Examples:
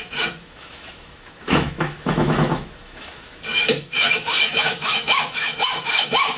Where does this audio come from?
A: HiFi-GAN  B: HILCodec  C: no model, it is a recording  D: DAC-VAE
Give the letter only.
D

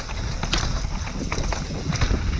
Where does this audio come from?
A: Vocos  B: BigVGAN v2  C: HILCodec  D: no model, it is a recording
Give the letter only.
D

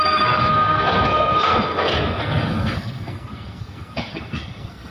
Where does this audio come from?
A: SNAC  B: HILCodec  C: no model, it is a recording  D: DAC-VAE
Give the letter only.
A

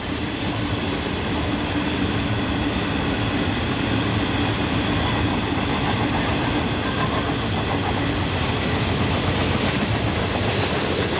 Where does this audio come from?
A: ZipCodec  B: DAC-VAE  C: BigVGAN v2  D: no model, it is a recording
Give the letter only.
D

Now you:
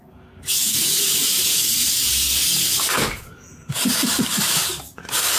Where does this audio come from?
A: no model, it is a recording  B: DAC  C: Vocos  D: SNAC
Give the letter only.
B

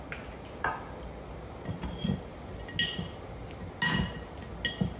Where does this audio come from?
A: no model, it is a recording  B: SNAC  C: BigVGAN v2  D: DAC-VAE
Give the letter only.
A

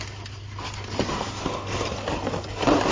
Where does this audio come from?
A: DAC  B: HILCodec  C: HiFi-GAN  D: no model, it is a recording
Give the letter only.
D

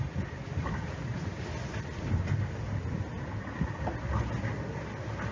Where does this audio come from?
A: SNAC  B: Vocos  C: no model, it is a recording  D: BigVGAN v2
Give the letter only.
C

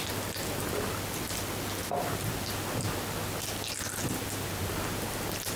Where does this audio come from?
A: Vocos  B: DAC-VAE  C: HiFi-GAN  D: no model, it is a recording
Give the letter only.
D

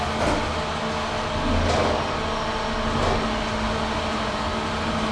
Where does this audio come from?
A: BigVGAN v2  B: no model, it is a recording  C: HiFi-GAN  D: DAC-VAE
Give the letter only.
B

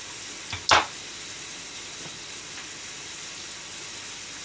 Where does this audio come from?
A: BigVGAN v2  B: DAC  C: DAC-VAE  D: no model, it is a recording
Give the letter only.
D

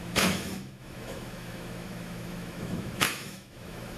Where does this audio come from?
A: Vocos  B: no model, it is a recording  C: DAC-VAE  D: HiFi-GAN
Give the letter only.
C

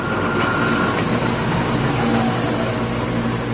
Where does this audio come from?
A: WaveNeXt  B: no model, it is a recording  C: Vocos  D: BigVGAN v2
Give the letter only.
B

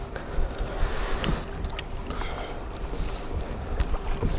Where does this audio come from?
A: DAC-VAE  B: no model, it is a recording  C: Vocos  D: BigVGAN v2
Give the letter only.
B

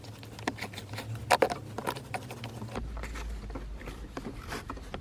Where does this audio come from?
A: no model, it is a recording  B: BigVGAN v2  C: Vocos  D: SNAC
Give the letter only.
A